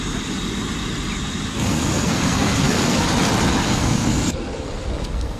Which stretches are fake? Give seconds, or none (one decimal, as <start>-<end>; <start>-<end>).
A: 1.5-3.1; 3.5-5.4